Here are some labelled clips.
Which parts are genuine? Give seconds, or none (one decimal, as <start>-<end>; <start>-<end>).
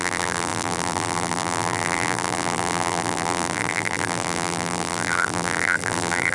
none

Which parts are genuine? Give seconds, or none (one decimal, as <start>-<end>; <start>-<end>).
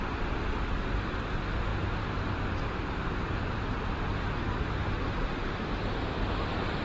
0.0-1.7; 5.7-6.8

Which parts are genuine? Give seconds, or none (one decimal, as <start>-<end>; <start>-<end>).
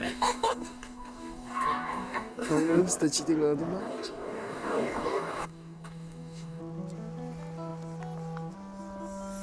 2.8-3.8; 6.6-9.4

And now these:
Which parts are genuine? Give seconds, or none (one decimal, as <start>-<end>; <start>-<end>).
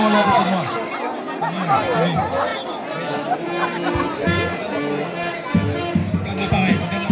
0.9-6.0; 6.5-7.1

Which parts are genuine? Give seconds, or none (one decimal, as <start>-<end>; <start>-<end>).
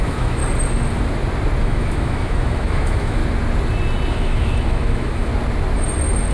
0.4-1.6; 3.2-4.1; 5.3-6.3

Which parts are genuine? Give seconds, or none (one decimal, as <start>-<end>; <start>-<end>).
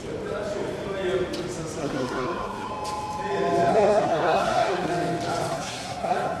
0.0-1.8; 2.7-3.7; 4.9-5.5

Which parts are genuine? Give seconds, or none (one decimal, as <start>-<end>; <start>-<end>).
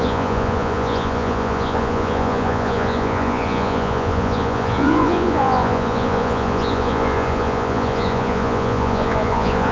none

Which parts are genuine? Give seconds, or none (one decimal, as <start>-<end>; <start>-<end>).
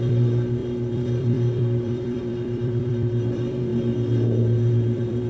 3.7-4.7